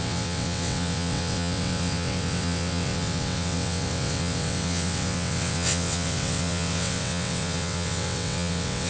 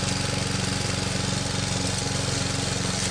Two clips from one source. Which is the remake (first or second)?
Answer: first